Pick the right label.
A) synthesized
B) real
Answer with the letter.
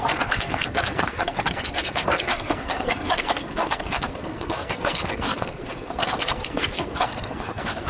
A